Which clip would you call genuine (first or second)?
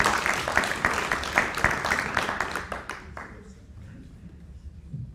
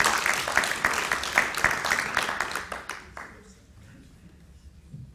second